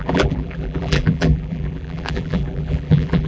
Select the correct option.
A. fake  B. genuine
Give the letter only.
A